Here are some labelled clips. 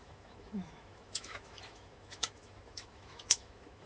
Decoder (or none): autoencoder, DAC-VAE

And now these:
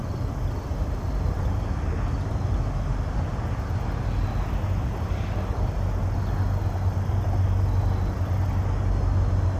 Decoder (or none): none